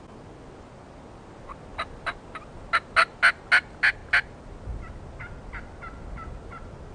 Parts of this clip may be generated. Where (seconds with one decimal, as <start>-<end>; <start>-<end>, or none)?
none